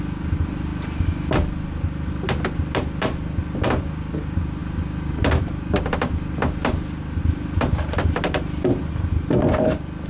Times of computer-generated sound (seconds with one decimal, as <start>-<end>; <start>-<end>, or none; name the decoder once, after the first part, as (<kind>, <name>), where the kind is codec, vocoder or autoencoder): none